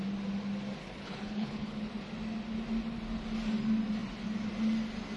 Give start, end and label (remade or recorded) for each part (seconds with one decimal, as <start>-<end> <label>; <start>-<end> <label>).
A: 0.0-0.8 recorded; 0.8-1.9 remade; 1.9-5.2 recorded